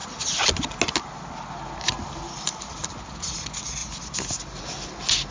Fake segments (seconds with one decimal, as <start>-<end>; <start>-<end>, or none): none